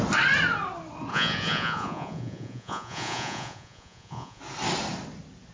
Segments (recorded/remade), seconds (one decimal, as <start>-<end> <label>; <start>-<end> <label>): 0.0-1.1 recorded; 1.1-4.4 remade; 4.4-5.5 recorded